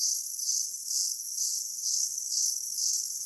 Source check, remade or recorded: remade